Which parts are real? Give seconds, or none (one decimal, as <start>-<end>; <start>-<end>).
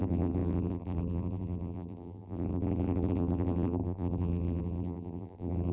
none